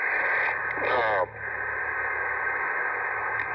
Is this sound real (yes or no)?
yes